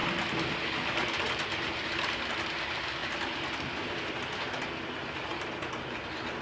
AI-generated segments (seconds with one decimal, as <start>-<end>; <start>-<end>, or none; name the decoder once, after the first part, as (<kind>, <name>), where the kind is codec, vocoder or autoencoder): 5.3-6.4 (vocoder, BigVGAN v2)